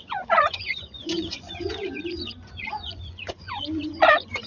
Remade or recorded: remade